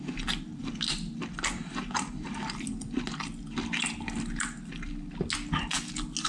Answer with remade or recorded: recorded